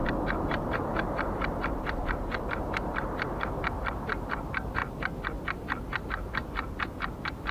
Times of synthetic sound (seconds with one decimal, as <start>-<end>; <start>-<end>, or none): 0.0-4.8; 6.0-7.5